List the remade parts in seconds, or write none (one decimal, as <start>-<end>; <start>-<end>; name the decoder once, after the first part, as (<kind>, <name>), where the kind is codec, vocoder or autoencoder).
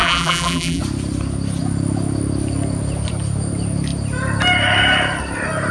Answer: 0.0-0.8 (vocoder, BigVGAN v2)